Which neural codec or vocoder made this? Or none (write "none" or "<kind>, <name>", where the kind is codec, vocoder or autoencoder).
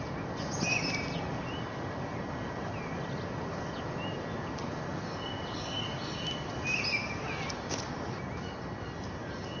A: none